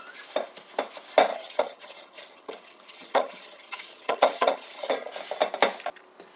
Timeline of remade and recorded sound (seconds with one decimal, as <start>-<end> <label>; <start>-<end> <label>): 0.0-1.3 recorded; 1.3-5.1 remade; 5.1-6.4 recorded